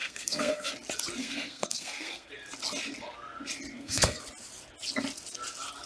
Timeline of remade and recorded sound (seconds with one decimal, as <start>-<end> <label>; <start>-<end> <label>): 0.0-0.7 remade; 0.7-1.2 recorded; 1.2-2.3 remade; 2.3-3.7 recorded; 3.7-4.2 remade; 4.2-5.9 recorded